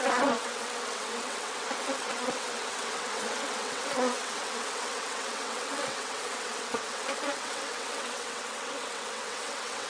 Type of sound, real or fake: fake